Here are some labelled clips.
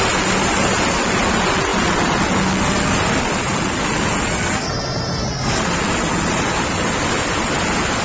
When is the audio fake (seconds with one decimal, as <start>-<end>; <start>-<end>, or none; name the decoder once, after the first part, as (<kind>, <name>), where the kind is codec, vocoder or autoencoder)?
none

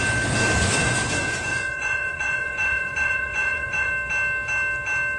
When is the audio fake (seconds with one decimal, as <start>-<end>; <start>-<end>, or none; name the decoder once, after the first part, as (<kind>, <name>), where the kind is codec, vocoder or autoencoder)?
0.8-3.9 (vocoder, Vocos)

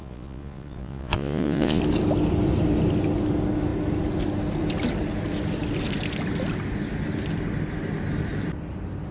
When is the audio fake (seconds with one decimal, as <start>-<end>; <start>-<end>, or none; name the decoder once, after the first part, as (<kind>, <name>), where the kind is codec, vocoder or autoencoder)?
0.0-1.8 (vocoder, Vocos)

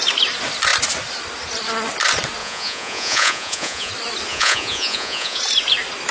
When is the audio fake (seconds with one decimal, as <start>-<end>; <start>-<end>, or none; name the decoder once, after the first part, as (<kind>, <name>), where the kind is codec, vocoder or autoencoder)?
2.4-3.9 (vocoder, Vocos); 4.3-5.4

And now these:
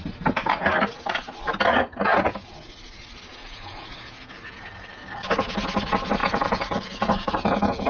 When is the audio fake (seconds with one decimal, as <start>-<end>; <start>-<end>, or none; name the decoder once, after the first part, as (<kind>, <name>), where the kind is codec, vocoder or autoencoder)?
2.1-2.7 (vocoder, Vocos); 3.3-4.6; 6.2-7.9

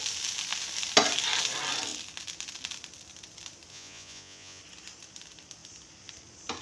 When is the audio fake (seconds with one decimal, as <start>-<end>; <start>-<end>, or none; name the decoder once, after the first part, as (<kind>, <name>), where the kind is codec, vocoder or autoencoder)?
3.7-4.6 (vocoder, Vocos)

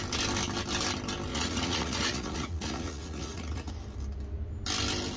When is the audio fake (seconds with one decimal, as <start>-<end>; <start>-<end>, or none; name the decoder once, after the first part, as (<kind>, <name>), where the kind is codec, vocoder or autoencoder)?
1.3-3.7 (vocoder, Vocos)

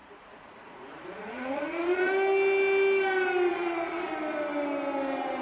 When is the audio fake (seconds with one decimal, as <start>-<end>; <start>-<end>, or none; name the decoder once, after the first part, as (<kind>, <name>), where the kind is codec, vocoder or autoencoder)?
0.0-2.1 (vocoder, Vocos); 3.5-4.1